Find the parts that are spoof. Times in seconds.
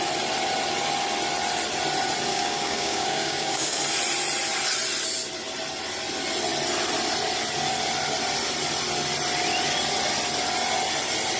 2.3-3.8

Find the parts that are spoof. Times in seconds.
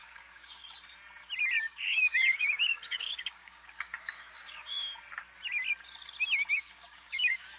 0.0-0.6; 1.6-4.8; 6.5-7.6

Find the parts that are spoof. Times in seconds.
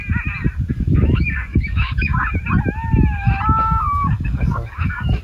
0.7-2.1; 3.6-5.2